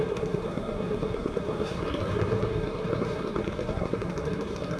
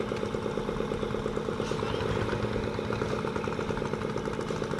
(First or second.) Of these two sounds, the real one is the second